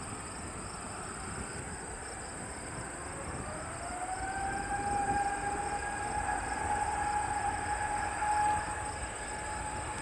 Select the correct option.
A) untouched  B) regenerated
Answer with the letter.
A